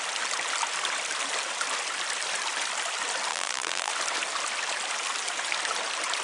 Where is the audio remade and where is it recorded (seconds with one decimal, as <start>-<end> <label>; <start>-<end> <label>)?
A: 0.0-3.3 recorded; 3.3-3.9 remade; 3.9-6.2 recorded